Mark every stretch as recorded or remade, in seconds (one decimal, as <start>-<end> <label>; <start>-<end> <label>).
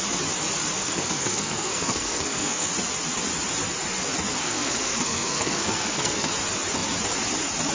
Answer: 0.0-0.8 recorded; 0.8-2.7 remade; 2.7-4.4 recorded; 4.4-6.3 remade; 6.3-7.7 recorded